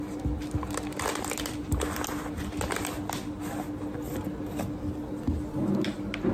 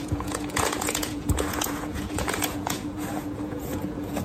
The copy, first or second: second